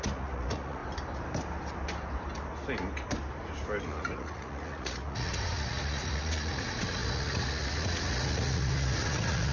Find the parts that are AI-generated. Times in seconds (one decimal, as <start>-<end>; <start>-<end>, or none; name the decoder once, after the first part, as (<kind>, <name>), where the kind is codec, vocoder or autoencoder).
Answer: 0.0-0.8 (vocoder, Vocos); 3.8-9.5